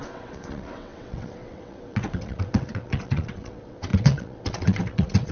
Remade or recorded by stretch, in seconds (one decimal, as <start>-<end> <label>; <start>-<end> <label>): 0.0-5.3 remade

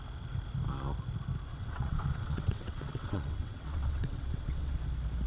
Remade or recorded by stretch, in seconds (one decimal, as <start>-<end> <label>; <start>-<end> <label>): 0.0-1.5 recorded; 1.5-4.7 remade; 4.7-5.3 recorded

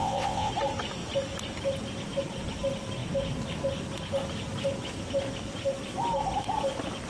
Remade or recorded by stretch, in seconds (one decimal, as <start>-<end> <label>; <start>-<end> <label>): 0.0-0.5 remade; 0.5-7.1 recorded

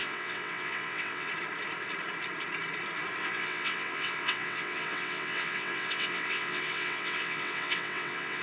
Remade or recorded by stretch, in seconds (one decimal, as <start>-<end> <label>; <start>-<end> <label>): 0.0-1.3 remade; 1.3-3.2 recorded; 3.2-8.4 remade

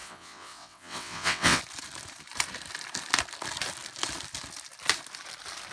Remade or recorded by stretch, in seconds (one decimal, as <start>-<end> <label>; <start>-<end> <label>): 0.0-1.6 remade; 1.6-5.7 recorded